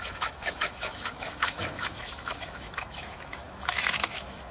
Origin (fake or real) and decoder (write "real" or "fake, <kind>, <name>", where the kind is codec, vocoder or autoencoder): fake, autoencoder, DAC-VAE